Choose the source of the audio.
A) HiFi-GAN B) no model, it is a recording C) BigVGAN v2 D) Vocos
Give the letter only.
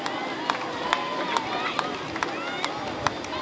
B